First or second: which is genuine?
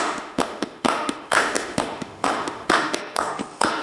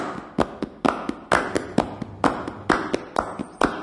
second